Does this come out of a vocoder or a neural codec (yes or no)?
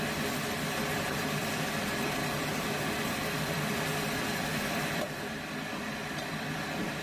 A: yes